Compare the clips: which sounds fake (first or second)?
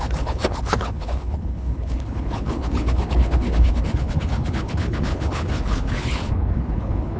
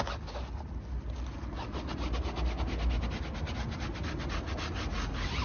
first